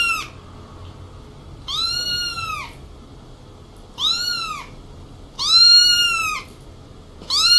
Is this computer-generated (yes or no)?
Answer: no